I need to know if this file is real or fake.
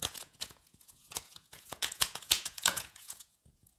fake